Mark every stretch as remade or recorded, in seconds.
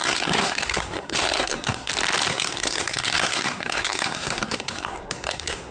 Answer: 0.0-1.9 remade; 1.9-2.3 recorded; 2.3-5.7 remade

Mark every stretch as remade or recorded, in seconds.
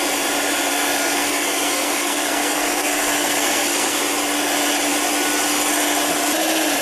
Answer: 0.0-0.7 recorded; 0.7-4.0 remade; 4.0-6.8 recorded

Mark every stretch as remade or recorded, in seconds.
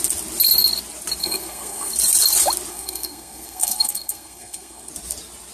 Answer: 0.0-1.2 recorded; 1.2-1.9 remade; 1.9-2.7 recorded; 2.7-4.9 remade; 4.9-5.5 recorded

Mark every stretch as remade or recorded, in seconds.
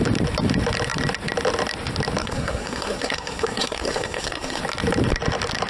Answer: 0.0-2.2 recorded; 2.2-4.6 remade; 4.6-5.7 recorded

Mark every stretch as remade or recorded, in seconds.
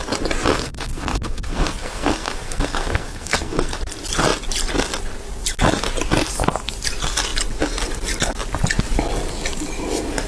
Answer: 0.0-0.5 recorded; 0.5-3.8 remade; 3.8-10.3 recorded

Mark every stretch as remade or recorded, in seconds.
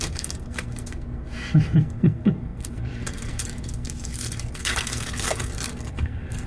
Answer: 0.0-6.5 remade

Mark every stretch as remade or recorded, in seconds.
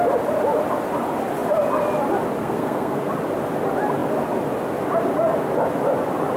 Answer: 0.0-2.4 recorded; 2.4-3.1 remade; 3.1-6.4 recorded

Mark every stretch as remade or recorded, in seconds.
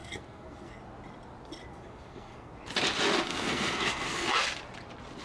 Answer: 0.0-0.8 remade; 0.8-1.7 recorded; 1.7-2.5 remade; 2.5-3.3 recorded; 3.3-4.3 remade; 4.3-5.2 recorded